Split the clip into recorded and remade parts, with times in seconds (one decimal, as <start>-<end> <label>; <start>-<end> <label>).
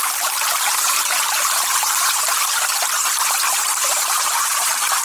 0.0-2.2 remade; 2.2-3.8 recorded; 3.8-5.0 remade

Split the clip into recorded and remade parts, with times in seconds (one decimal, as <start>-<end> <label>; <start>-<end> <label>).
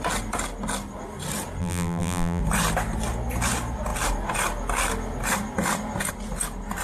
0.0-1.6 recorded; 1.6-2.4 remade; 2.4-6.8 recorded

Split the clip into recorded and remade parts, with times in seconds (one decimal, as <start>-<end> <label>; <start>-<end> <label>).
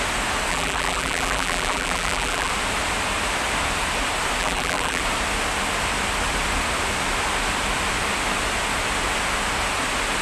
0.0-0.5 recorded; 0.5-2.5 remade; 2.5-4.4 recorded; 4.4-5.0 remade; 5.0-10.2 recorded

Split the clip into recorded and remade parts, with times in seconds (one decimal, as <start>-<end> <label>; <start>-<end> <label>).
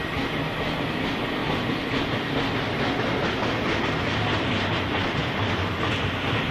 0.0-1.4 recorded; 1.4-3.8 remade; 3.8-5.2 recorded; 5.2-5.9 remade; 5.9-6.5 recorded